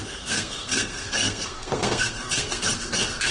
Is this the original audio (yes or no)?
no